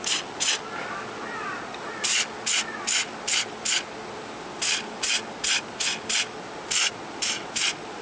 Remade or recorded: recorded